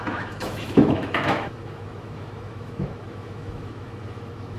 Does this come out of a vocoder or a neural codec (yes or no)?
yes